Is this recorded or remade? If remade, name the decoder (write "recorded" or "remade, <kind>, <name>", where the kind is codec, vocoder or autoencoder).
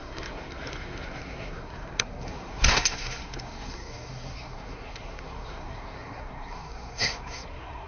remade, codec, SNAC